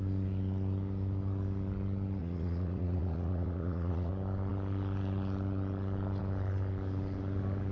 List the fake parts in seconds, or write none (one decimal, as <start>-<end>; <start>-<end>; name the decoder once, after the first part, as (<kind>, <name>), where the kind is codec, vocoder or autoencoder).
2.2-4.1 (vocoder, Vocos)